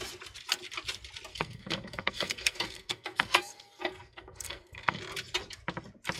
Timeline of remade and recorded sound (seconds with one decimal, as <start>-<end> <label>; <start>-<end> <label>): 0.0-1.3 recorded; 1.3-5.0 remade; 5.0-6.2 recorded